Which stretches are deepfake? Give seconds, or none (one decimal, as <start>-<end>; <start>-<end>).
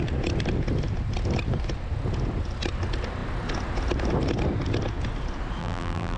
5.6-6.2